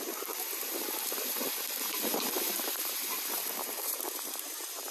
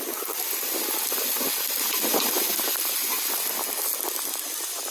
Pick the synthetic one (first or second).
first